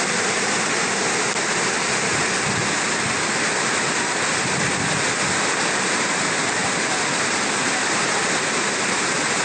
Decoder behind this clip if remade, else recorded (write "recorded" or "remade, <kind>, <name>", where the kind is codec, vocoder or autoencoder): recorded